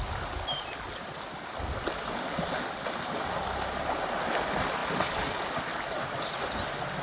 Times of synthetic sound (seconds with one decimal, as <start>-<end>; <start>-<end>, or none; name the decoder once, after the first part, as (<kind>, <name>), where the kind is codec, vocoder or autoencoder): none